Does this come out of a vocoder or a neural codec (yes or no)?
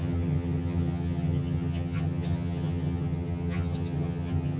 yes